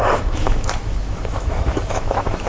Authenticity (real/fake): fake